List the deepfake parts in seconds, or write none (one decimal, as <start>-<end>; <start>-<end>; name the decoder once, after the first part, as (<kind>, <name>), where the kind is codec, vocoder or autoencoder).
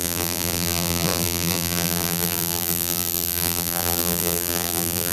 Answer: 0.0-5.1 (vocoder, BigVGAN v2)